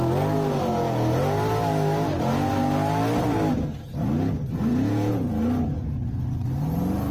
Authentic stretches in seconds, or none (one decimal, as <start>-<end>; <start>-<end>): 0.0-4.7; 5.3-7.1